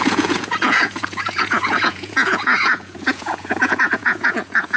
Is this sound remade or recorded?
remade